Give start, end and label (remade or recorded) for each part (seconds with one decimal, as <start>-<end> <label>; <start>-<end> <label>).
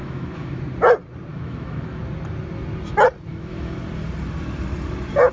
0.0-0.6 remade; 0.6-1.3 recorded; 1.3-2.0 remade; 2.0-3.3 recorded; 3.3-3.8 remade; 3.8-5.3 recorded